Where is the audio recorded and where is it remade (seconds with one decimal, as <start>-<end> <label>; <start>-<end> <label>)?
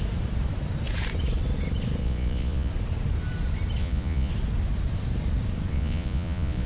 0.0-2.0 recorded; 2.0-2.7 remade; 2.7-3.8 recorded; 3.8-4.3 remade; 4.3-5.7 recorded; 5.7-6.7 remade